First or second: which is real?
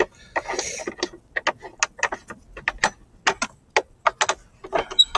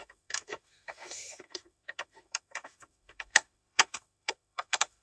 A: first